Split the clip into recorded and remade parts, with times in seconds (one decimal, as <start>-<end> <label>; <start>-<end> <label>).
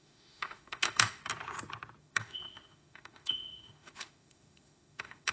0.0-1.2 remade; 1.2-2.0 recorded; 2.0-5.3 remade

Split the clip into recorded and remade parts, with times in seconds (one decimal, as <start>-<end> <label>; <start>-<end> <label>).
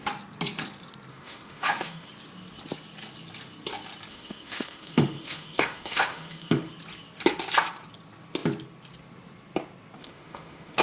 0.0-1.1 recorded; 1.1-2.1 remade; 2.1-4.1 recorded; 4.1-6.7 remade; 6.7-10.0 recorded; 10.0-10.8 remade